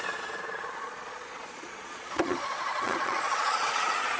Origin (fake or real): fake